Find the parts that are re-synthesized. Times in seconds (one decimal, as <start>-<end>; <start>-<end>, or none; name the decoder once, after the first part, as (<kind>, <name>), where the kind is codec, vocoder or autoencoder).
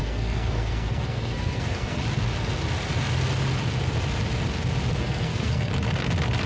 0.0-2.0 (codec, SNAC); 4.9-5.7